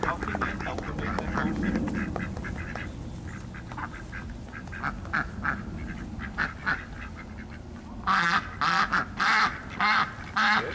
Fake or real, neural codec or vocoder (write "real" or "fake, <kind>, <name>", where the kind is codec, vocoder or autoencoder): real